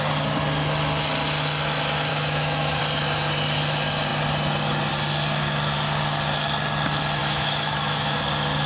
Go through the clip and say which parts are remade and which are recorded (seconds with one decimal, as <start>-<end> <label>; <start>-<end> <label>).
0.0-2.1 recorded; 2.1-2.8 remade; 2.8-7.2 recorded; 7.2-8.2 remade; 8.2-8.7 recorded